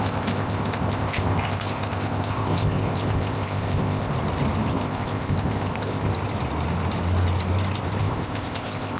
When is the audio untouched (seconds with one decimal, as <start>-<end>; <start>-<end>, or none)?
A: 4.1-4.7; 6.1-8.0